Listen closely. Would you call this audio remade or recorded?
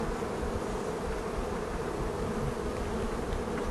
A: remade